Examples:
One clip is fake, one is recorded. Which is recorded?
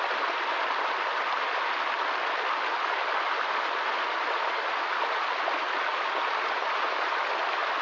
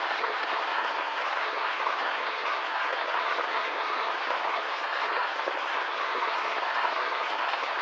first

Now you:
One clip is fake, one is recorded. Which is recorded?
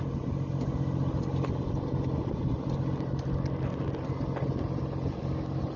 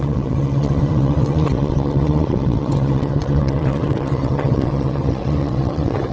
first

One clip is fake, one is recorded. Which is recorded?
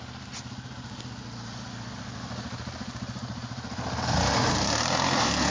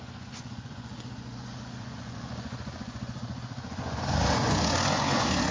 first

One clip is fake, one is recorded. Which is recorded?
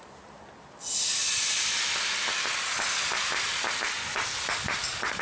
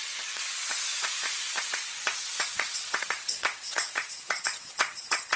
first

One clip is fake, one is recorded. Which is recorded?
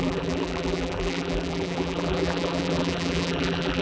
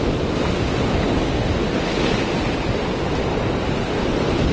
second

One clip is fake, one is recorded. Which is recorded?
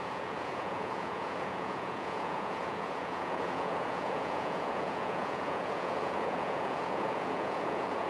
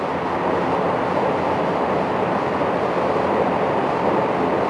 second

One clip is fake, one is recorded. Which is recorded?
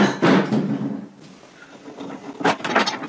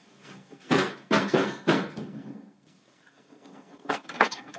first